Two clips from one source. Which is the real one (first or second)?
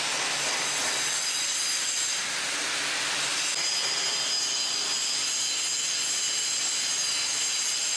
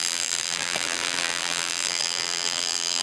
first